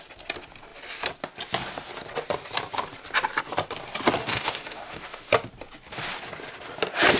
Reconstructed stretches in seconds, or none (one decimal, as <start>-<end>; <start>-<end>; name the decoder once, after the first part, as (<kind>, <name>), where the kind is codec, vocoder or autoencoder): 4.2-5.3 (autoencoder, DAC-VAE)